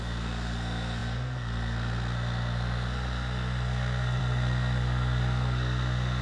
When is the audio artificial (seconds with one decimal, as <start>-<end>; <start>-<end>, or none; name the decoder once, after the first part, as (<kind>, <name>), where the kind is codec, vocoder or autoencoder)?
0.0-6.2 (codec, SNAC)